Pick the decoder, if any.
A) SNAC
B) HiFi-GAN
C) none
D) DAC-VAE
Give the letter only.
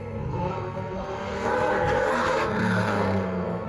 A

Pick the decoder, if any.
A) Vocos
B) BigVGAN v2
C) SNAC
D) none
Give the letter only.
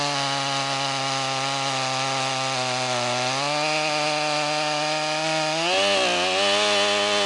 D